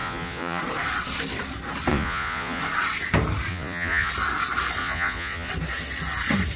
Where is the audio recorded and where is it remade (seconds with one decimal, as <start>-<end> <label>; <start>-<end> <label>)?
0.0-0.6 remade; 0.6-1.9 recorded; 1.9-2.6 remade; 2.6-3.5 recorded; 3.5-4.1 remade; 4.1-4.8 recorded; 4.8-5.5 remade; 5.5-6.6 recorded